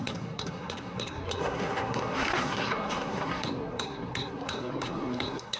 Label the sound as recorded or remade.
remade